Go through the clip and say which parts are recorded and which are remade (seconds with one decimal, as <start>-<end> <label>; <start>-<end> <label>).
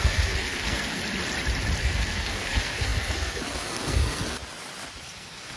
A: 0.0-1.0 remade; 1.0-1.8 recorded; 1.8-4.4 remade; 4.4-5.0 recorded; 5.0-5.6 remade